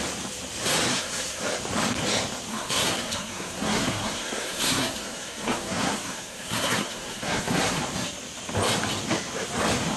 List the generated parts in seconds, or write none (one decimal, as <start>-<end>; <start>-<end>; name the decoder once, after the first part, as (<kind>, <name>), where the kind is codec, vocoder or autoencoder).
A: 0.9-1.4 (codec, SNAC); 2.5-7.8